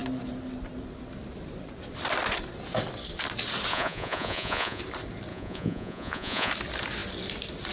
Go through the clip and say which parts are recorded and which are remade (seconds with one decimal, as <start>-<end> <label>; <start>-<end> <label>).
0.0-3.7 recorded; 3.7-4.8 remade; 4.8-5.3 recorded; 5.3-6.5 remade; 6.5-7.7 recorded